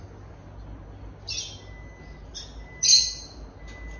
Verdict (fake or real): real